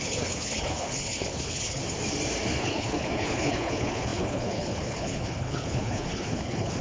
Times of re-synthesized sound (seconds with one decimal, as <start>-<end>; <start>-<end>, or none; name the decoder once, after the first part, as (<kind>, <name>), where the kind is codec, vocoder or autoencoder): 0.0-1.8 (codec, HILCodec); 2.6-6.8